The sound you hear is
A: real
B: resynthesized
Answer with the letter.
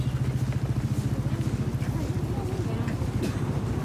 A